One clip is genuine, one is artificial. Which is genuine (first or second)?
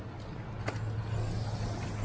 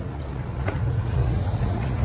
first